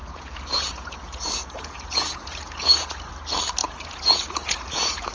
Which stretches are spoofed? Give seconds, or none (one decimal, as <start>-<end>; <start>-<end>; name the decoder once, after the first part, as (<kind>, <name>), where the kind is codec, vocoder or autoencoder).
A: 0.0-3.1 (vocoder, Vocos); 3.6-5.1